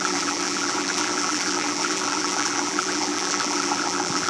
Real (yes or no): no